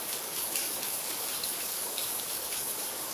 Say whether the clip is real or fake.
fake